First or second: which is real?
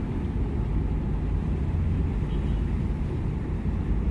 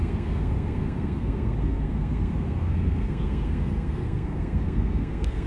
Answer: first